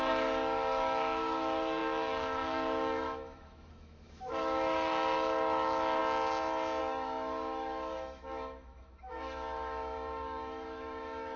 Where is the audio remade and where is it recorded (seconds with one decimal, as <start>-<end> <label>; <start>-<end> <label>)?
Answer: 0.0-6.0 remade; 6.0-6.8 recorded; 6.8-11.4 remade